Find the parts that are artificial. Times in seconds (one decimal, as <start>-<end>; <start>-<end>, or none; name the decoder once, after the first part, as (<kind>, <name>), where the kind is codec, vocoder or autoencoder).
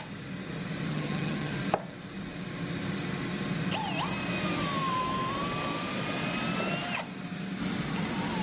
0.9-1.5 (vocoder, HiFi-GAN)